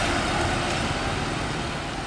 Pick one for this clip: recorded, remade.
recorded